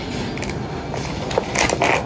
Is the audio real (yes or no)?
yes